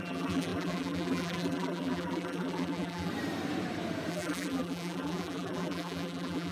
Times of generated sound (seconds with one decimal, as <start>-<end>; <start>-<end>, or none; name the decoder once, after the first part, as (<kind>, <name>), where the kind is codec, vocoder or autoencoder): 0.0-3.1 (vocoder, BigVGAN v2); 4.1-6.5